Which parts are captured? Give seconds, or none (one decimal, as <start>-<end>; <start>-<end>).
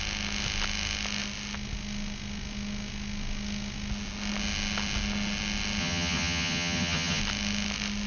0.0-5.8; 7.2-8.1